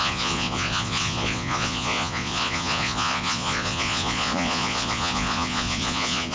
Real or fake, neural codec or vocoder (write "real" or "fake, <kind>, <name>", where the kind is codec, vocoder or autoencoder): fake, vocoder, Vocos